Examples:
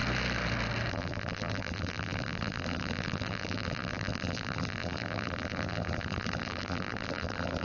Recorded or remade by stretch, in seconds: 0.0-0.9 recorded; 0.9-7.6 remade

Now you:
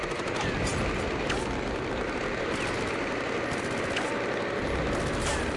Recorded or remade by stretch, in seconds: 0.0-5.6 recorded

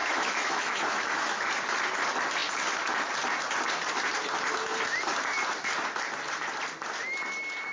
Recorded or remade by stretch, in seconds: 0.0-1.5 remade; 1.5-7.7 recorded

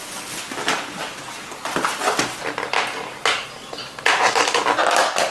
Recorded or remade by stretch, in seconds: 0.0-5.3 recorded

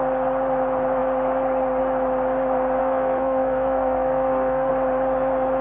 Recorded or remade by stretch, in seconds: 0.0-2.8 recorded; 2.8-4.7 remade; 4.7-5.6 recorded

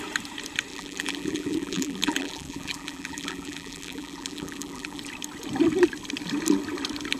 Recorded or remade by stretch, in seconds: 0.0-0.7 recorded; 0.7-5.0 remade; 5.0-7.2 recorded